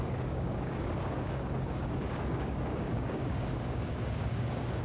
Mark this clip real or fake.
fake